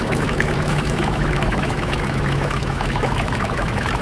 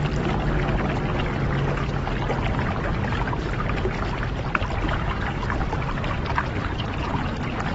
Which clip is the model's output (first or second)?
first